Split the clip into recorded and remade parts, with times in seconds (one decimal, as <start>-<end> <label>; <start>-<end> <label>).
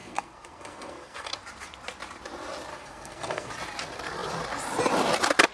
0.0-1.3 remade; 1.3-2.7 recorded; 2.7-3.5 remade; 3.5-5.5 recorded